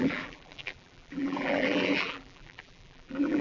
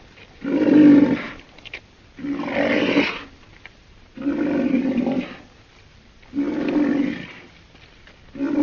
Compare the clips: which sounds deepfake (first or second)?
first